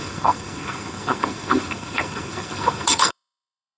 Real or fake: fake